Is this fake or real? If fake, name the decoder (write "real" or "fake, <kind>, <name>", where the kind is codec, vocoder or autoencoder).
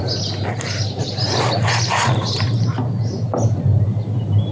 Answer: real